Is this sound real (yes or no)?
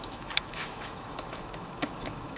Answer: no